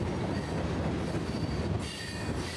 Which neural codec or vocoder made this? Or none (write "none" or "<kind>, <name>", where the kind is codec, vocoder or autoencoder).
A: none